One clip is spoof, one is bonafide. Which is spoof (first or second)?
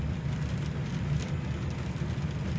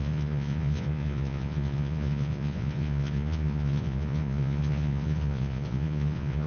second